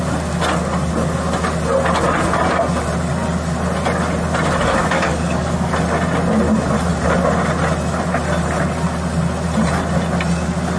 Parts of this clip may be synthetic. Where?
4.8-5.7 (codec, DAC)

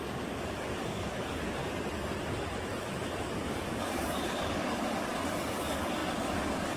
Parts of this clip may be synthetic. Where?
0.0-1.6 (codec, DAC); 2.8-6.8

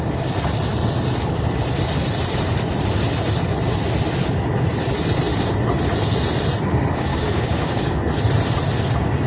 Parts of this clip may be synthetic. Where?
7.1-8.0 (codec, DAC)

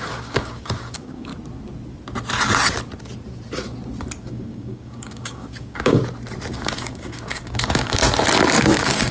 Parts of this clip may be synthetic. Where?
0.0-1.3 (codec, DAC); 4.2-6.0; 6.5-8.0; 8.6-9.1

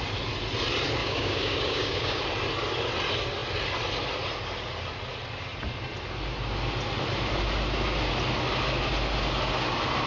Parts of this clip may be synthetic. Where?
1.0-2.2 (codec, DAC)

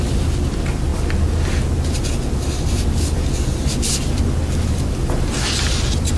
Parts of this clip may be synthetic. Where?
none